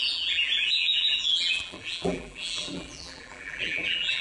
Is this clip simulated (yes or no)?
yes